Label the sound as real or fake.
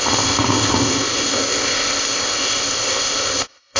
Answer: fake